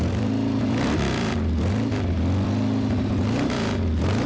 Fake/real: fake